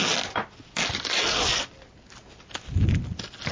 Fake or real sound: real